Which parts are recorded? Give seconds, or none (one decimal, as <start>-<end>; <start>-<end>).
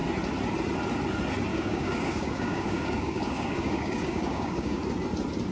0.0-1.5; 4.8-5.5